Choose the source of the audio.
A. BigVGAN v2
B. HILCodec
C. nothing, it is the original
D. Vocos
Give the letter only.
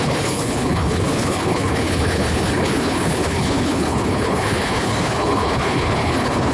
B